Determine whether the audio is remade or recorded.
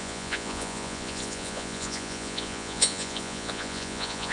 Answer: remade